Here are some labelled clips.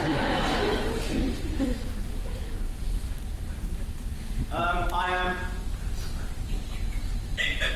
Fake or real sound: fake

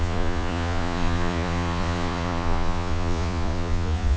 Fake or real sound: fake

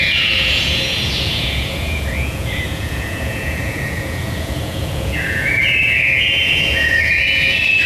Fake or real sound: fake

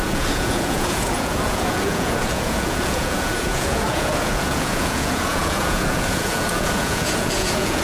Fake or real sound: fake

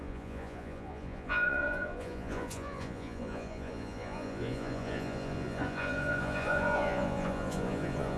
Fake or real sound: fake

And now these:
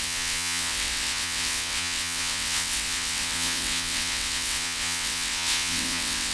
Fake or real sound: fake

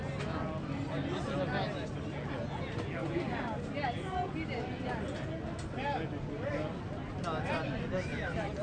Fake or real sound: real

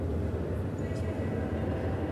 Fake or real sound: real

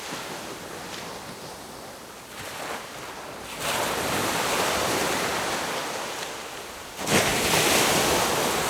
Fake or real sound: real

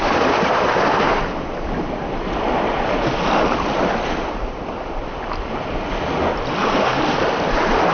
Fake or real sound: real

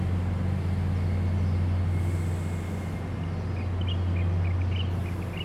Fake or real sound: real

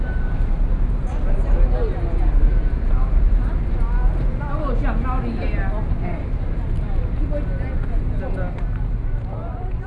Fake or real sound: real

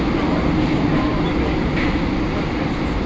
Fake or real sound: real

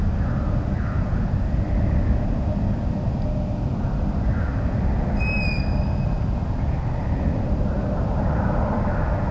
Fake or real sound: real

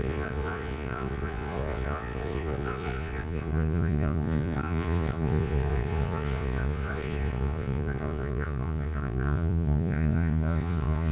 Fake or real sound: fake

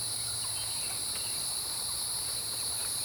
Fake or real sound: fake